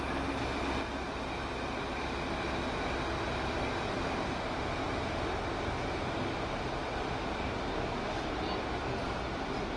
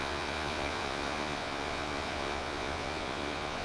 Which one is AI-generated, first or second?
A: second